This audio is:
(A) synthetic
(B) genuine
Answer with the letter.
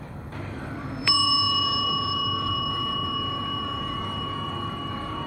A